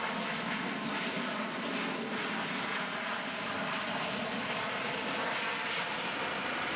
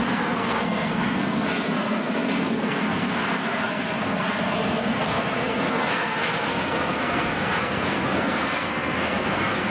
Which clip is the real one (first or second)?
first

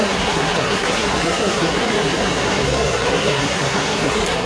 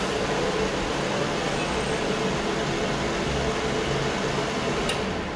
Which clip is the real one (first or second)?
second